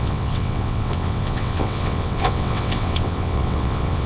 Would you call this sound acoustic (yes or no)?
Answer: no